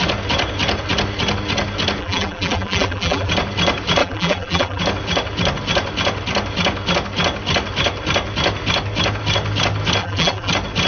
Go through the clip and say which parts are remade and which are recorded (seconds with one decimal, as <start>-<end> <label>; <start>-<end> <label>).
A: 0.0-2.0 recorded; 2.0-3.3 remade; 3.3-4.0 recorded; 4.0-4.8 remade; 4.8-10.0 recorded; 10.0-10.5 remade; 10.5-10.9 recorded